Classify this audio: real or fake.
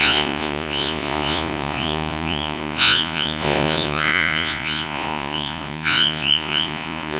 fake